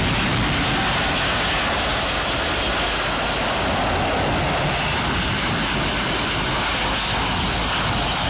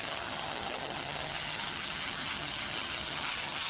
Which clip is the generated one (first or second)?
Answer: second